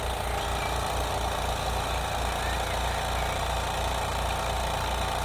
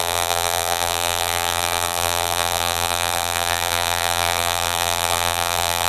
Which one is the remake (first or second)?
second